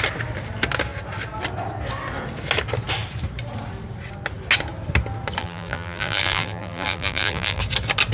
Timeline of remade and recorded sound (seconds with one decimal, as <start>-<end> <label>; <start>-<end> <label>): 0.0-5.4 recorded; 5.4-7.6 remade; 7.6-8.1 recorded